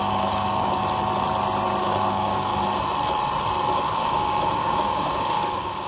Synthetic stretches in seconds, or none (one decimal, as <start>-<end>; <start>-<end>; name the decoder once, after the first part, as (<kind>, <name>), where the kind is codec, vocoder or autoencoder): 0.0-0.8 (codec, DAC); 1.8-2.5; 3.7-5.9